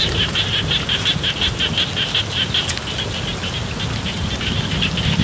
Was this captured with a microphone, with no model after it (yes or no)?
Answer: yes